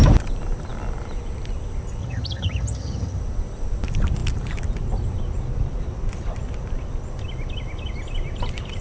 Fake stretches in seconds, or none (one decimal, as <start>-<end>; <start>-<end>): 2.0-3.2